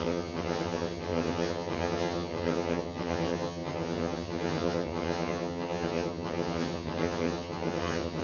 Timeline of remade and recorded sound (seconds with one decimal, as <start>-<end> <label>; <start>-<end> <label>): 0.0-8.2 remade